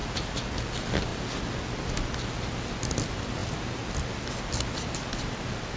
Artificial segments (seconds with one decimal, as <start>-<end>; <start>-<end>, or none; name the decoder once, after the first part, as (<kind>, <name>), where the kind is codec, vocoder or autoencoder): none